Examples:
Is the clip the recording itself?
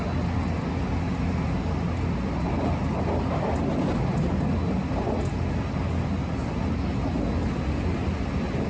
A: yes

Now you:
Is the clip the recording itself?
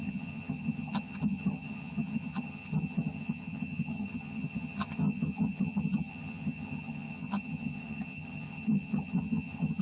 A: no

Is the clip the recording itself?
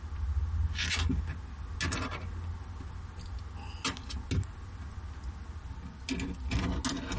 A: yes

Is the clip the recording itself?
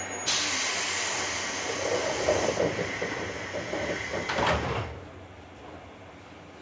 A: yes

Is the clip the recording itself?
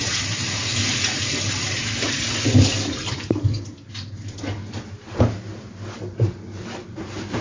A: yes